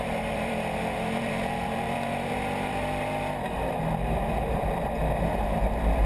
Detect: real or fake fake